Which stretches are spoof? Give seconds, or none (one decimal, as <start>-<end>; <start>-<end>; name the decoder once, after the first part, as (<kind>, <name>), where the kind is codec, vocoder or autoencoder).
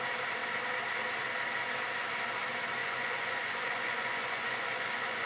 2.8-5.3 (vocoder, Vocos)